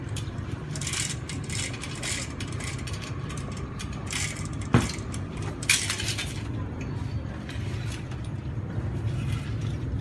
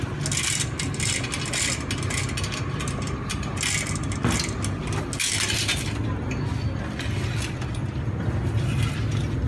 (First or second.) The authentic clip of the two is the second